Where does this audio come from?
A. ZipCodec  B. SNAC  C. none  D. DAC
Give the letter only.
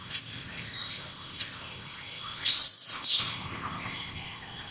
A